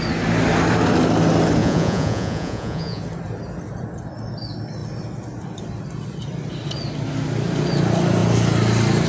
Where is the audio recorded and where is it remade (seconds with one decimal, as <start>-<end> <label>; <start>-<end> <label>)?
0.0-1.6 recorded; 1.6-3.0 remade; 3.0-9.1 recorded